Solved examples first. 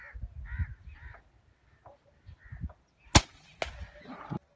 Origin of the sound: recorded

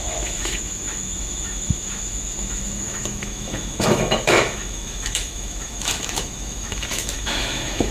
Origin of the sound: remade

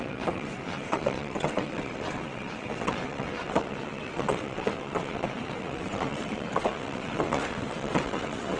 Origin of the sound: remade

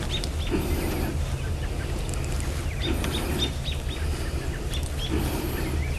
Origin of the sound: recorded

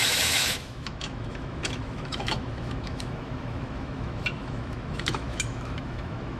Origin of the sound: remade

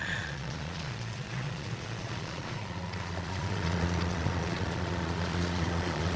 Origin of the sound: remade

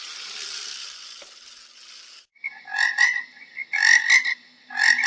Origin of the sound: recorded